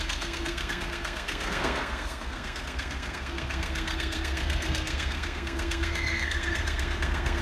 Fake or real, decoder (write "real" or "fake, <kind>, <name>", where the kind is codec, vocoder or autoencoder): fake, codec, SNAC